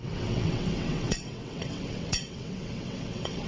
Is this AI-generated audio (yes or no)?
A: yes